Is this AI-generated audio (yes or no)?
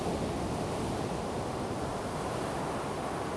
no